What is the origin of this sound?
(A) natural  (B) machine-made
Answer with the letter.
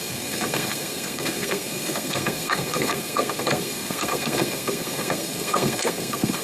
B